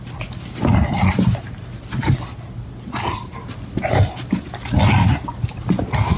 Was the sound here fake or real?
real